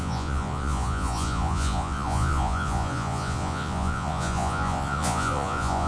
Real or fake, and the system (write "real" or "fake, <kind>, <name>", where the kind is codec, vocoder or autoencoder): fake, vocoder, Vocos